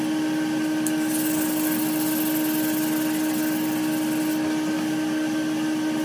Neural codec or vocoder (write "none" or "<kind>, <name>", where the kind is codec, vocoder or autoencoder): none